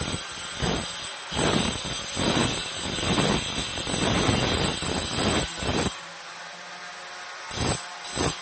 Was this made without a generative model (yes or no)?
yes